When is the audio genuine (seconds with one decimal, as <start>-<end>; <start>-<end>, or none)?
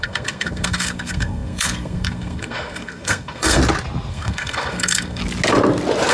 3.6-4.1; 5.2-6.1